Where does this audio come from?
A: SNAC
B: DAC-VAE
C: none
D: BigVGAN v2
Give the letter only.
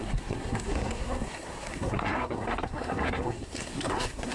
A